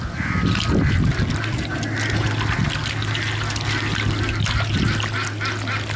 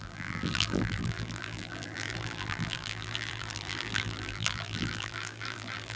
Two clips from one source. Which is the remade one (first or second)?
second